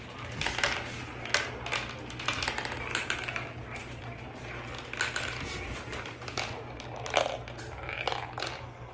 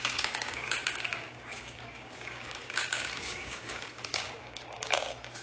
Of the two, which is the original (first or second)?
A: first